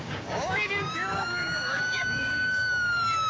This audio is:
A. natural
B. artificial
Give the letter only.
B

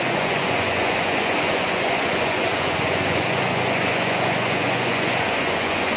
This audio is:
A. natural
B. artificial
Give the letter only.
B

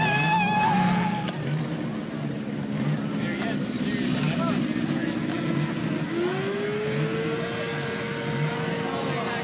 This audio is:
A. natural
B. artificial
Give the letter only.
A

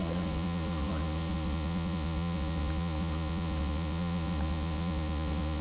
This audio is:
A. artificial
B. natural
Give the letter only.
A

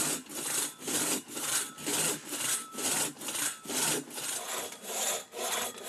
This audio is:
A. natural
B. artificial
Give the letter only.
B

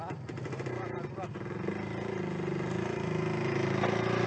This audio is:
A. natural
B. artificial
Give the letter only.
A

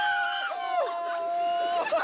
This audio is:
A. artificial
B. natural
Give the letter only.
B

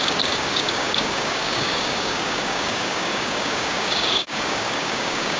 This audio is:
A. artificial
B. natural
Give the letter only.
A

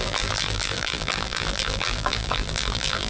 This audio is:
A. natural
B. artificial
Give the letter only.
B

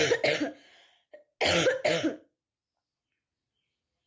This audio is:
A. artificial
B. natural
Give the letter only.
B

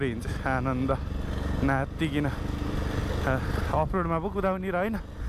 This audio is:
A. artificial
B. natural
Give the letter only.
B